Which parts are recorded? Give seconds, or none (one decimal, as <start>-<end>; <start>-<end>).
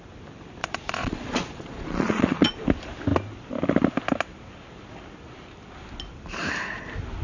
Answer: 0.0-0.6; 2.5-7.2